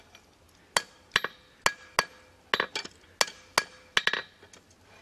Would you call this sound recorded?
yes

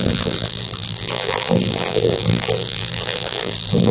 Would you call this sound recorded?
no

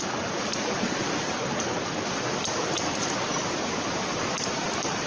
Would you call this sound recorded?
yes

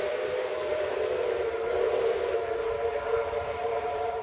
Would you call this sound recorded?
no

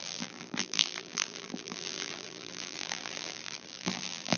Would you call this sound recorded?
no